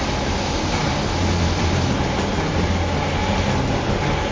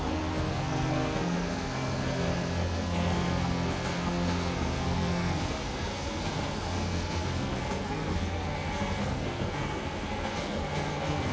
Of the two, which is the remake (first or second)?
second